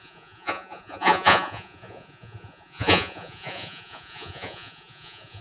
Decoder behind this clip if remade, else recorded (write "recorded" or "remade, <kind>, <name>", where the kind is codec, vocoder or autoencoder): remade, vocoder, Vocos